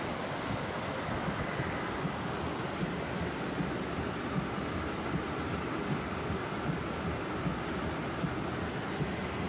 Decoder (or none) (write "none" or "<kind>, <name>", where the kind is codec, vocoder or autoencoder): none